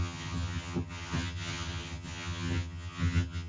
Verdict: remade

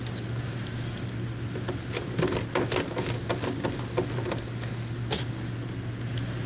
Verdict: recorded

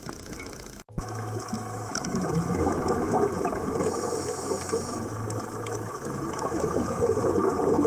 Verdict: remade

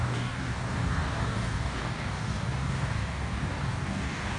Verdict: remade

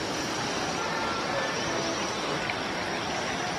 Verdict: recorded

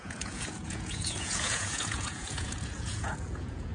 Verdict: remade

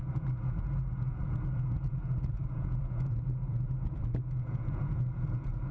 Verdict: remade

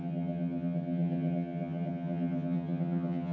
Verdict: remade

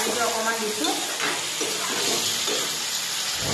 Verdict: recorded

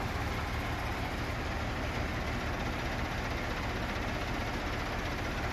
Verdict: recorded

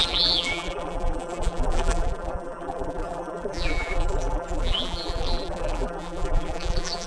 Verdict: remade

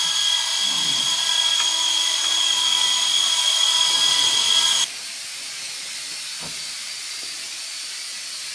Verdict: recorded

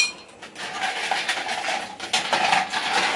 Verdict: recorded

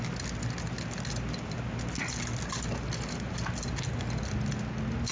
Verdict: recorded